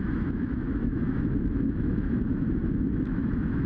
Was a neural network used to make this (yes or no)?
yes